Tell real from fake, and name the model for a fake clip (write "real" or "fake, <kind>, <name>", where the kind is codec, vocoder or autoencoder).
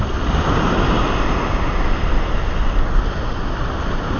real